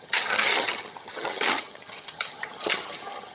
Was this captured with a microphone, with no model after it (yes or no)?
no